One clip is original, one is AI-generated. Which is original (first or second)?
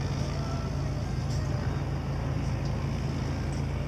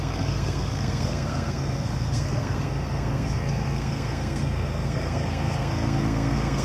first